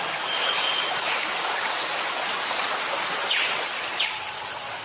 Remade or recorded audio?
recorded